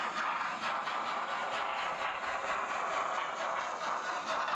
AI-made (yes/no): yes